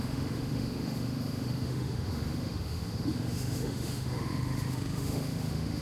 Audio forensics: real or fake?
fake